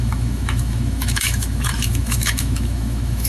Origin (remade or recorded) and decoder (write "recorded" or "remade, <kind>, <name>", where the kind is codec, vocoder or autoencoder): remade, autoencoder, DAC-VAE